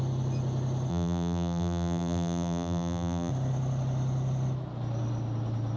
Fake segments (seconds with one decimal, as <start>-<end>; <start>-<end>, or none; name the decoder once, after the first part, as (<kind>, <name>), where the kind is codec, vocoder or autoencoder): 0.9-3.3 (vocoder, BigVGAN v2)